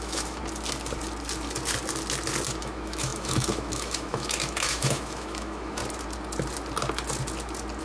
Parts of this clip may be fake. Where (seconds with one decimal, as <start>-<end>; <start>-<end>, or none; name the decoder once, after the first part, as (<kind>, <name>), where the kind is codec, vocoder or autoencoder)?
0.0-0.4 (autoencoder, DAC-VAE); 2.6-5.8